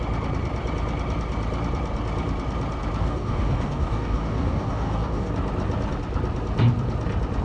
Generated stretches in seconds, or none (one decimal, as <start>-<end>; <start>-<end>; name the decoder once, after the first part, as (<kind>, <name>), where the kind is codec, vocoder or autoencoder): 3.0-5.3 (codec, DAC)